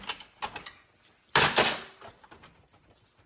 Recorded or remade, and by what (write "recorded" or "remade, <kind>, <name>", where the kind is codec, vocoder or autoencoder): recorded